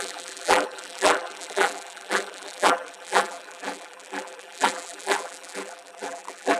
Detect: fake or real fake